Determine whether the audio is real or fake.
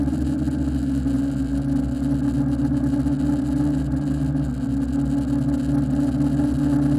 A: real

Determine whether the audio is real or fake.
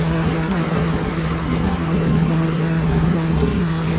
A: fake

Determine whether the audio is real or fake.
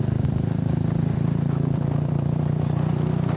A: fake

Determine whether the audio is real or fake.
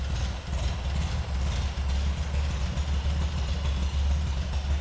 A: real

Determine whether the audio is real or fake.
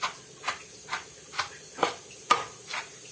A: real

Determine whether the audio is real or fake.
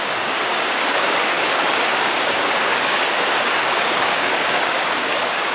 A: fake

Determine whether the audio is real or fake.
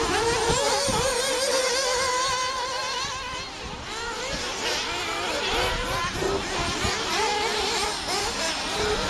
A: real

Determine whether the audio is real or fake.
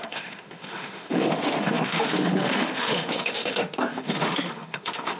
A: fake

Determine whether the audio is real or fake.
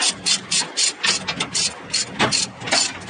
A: real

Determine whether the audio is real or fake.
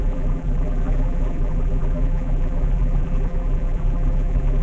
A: fake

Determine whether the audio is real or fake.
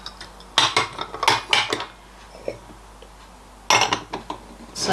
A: real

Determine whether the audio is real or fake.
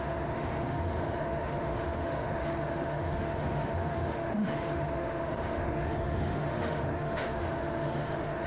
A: fake